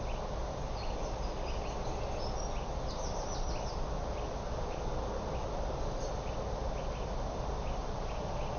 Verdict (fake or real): real